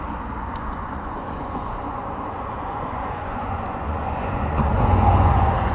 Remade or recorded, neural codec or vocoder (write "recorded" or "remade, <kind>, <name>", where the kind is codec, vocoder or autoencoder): remade, vocoder, Vocos